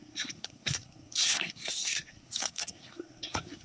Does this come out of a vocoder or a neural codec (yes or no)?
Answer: yes